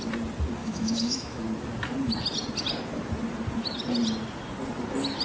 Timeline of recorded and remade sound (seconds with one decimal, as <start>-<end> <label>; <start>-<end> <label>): 0.0-0.6 recorded; 0.6-1.4 remade; 1.4-5.2 recorded